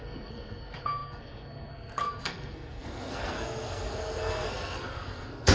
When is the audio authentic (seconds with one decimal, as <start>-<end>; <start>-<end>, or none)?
none